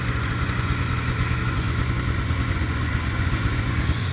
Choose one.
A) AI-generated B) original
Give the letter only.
A